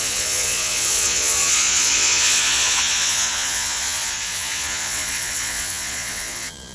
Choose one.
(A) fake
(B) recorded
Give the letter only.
A